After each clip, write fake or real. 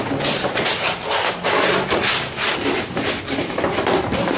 real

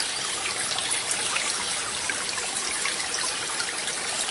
real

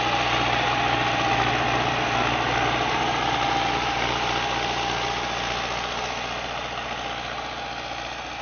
real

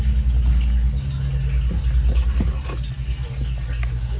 real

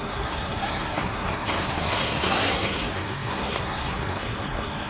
fake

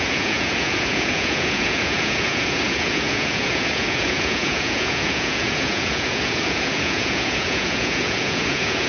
fake